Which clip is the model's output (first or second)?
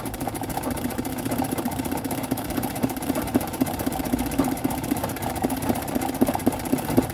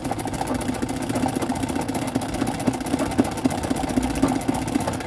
first